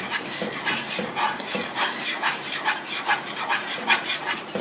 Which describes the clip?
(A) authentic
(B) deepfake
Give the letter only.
B